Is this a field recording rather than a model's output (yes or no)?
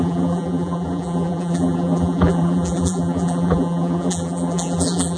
no